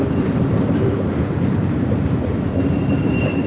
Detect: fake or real fake